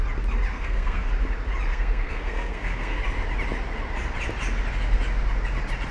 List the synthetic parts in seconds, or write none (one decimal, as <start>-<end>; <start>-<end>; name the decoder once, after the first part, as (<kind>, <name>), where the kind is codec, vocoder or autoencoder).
0.5-1.1 (codec, SNAC); 1.7-3.0